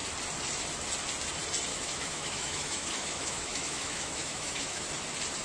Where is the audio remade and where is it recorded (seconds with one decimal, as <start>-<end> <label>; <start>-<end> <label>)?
0.0-1.7 recorded; 1.7-4.9 remade; 4.9-5.4 recorded